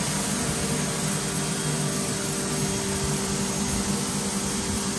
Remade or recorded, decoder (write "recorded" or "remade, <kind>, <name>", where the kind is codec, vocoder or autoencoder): recorded